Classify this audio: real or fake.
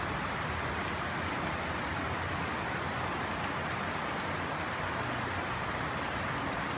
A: real